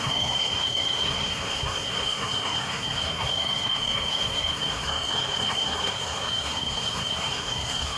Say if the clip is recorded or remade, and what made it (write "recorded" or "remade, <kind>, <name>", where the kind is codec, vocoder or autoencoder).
remade, codec, SNAC